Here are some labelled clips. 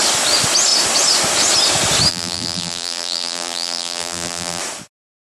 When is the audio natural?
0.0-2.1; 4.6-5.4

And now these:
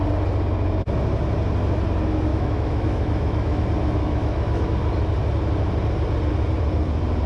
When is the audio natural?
0.0-2.3; 3.6-4.0; 4.6-7.3

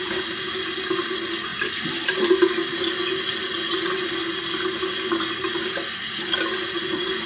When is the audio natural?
0.0-7.3